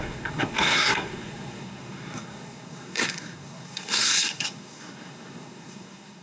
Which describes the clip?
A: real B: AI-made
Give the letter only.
B